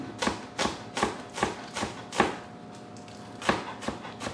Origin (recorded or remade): recorded